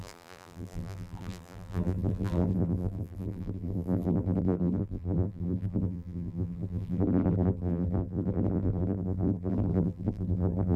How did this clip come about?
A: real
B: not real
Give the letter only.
B